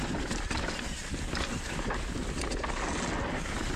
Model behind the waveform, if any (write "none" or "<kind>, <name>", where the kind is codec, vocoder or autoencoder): none